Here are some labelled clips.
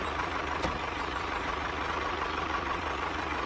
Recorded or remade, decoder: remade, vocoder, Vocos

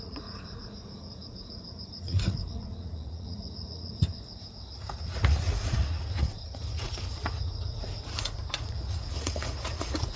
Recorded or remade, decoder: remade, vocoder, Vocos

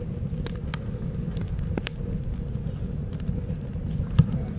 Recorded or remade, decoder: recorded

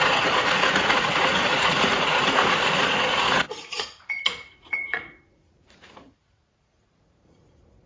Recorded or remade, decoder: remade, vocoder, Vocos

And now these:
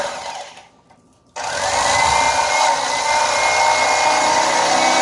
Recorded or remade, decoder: recorded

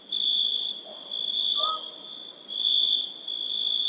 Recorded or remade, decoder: recorded